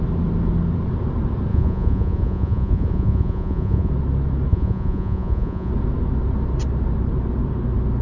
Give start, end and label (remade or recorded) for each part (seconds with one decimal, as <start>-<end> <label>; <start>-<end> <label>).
0.0-1.5 recorded; 1.5-3.9 remade; 3.9-4.5 recorded; 4.5-5.7 remade; 5.7-8.0 recorded